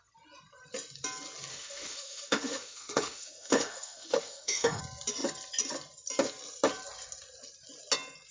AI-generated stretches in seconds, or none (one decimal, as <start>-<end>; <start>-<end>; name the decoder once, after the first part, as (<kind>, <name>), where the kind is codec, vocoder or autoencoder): 1.5-4.8 (autoencoder, DAC-VAE)